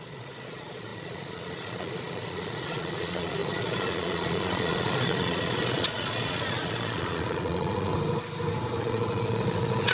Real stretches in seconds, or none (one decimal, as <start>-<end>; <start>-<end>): 7.9-8.8